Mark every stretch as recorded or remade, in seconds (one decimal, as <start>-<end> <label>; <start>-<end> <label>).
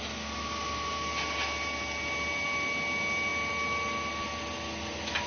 0.0-5.3 recorded